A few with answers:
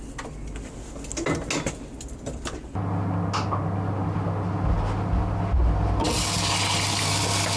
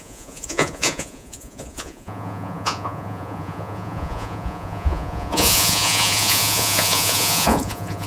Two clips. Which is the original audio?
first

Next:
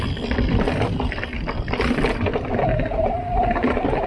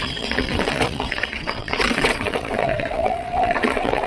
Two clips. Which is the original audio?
first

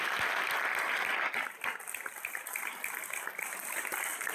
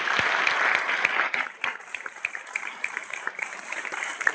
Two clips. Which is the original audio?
first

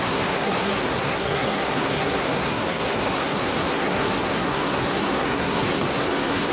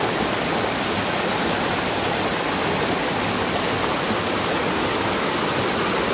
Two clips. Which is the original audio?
second